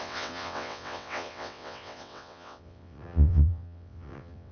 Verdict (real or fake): fake